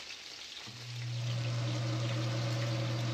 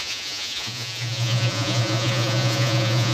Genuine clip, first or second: first